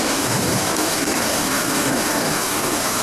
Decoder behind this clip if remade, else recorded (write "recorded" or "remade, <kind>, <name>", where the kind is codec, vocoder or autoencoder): remade, codec, DAC